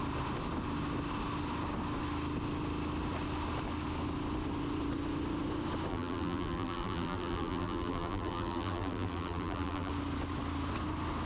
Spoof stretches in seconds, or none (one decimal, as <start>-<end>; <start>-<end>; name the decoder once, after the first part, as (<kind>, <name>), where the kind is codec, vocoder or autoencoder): 5.9-9.9 (vocoder, BigVGAN v2)